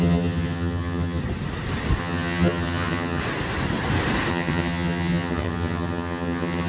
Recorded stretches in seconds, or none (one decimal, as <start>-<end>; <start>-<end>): 1.2-2.0; 3.2-4.3